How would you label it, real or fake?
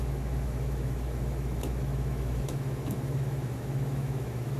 fake